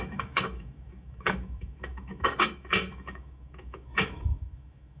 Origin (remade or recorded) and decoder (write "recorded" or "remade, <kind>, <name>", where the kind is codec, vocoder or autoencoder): remade, autoencoder, DAC-VAE